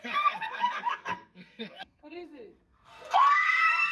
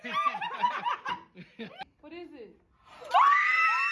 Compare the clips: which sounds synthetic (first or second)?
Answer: first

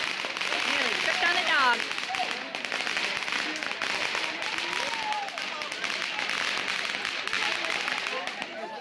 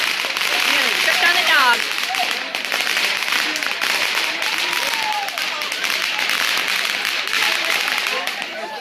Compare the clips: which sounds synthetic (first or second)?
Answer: second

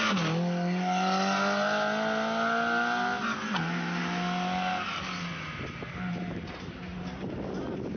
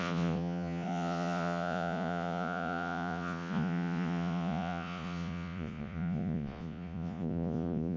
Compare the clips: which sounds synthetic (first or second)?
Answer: second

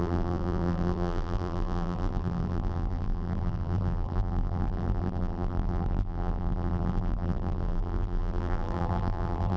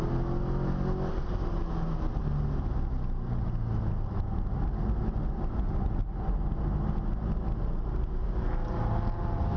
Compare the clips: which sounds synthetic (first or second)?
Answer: first